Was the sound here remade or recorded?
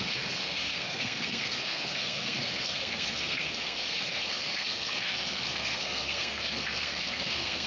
remade